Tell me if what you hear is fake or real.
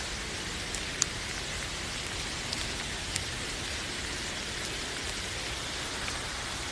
real